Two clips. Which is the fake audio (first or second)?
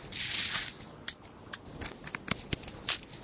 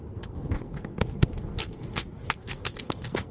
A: second